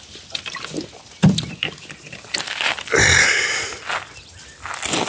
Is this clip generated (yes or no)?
no